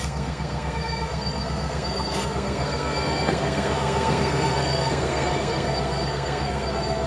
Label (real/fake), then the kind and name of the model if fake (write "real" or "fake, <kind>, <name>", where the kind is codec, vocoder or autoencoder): fake, codec, SNAC